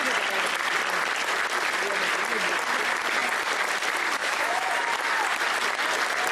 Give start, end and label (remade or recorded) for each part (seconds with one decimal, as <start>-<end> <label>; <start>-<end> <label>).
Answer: 0.0-4.2 recorded; 4.2-4.7 remade; 4.7-6.3 recorded